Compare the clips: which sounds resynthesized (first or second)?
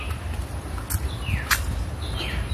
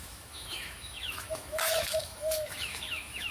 second